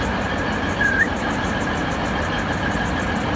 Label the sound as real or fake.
real